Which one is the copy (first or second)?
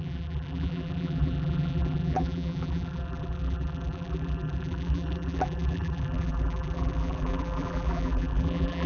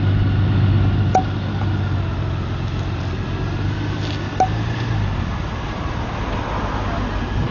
first